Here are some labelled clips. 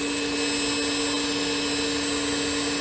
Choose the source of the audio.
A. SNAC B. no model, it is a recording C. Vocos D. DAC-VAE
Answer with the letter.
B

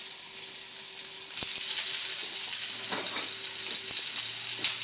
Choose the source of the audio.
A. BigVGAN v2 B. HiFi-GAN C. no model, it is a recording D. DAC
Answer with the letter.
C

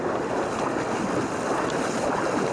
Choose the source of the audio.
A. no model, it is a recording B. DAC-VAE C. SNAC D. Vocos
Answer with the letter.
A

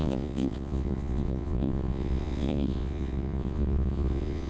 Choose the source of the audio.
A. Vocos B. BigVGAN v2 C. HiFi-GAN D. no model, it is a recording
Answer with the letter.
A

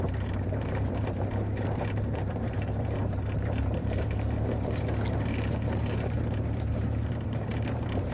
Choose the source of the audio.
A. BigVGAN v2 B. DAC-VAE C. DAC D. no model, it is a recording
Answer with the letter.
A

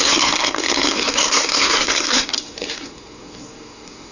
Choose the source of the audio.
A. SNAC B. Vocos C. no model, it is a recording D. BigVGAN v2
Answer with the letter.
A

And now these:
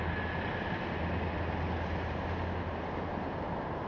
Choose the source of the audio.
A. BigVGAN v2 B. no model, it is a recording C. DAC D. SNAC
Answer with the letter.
B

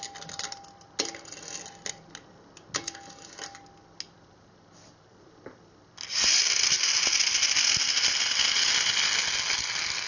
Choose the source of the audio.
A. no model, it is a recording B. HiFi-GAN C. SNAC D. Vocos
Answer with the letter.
A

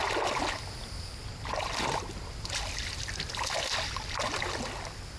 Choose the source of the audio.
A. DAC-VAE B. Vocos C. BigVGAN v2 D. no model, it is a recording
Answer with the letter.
D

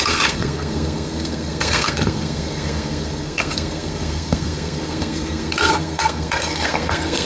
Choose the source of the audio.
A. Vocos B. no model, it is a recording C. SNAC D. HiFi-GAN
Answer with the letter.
C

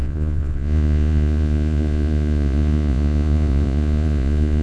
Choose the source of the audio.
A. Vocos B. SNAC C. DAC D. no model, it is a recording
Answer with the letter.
A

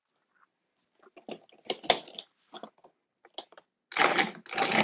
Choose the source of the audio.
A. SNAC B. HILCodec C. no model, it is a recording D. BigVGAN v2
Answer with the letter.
C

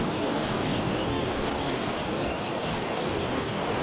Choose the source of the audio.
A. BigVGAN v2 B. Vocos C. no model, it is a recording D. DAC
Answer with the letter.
D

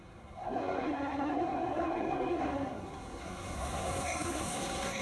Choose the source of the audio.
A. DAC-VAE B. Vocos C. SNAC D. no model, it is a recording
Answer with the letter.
C